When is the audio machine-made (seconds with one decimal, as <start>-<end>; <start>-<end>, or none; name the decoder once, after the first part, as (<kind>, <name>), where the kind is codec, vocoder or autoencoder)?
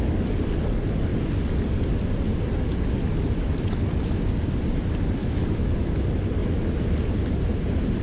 5.2-5.9 (autoencoder, DAC-VAE)